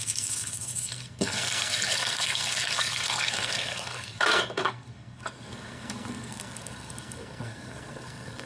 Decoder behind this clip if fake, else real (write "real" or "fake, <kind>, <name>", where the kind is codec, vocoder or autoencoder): fake, codec, SNAC